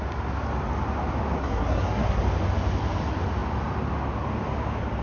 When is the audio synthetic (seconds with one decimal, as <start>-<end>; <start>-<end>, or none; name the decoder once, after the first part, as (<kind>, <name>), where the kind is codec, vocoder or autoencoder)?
1.4-2.2 (codec, SNAC)